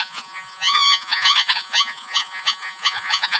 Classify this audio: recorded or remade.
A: remade